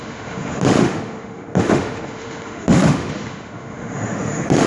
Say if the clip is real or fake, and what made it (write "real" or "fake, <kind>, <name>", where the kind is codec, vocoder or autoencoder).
fake, autoencoder, DAC-VAE